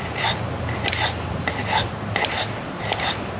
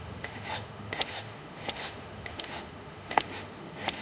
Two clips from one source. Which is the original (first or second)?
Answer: first